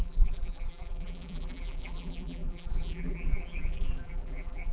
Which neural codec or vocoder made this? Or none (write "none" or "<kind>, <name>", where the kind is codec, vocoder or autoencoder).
vocoder, BigVGAN v2